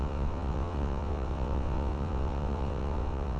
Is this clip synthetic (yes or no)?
yes